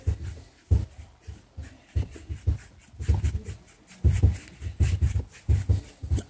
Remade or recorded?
recorded